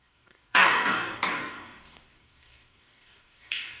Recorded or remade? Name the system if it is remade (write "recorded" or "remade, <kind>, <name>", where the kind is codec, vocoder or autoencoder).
remade, codec, DAC